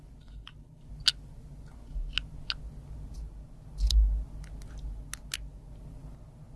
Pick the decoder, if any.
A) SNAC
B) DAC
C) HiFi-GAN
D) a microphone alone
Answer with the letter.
D